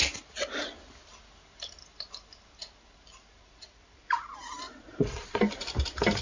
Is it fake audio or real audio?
real